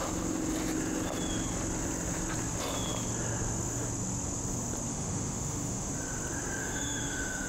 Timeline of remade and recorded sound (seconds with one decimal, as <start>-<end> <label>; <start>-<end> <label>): 0.0-4.9 recorded; 4.9-5.9 remade; 5.9-6.6 recorded; 6.6-7.5 remade